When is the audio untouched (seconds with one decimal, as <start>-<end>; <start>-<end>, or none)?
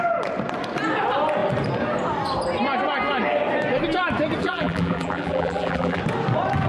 0.0-4.4; 6.0-6.7